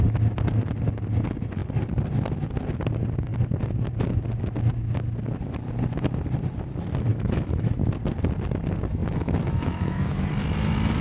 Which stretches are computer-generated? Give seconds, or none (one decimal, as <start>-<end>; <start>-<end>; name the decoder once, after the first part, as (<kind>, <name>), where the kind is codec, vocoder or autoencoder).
7.1-7.7 (autoencoder, DAC-VAE); 9.0-10.3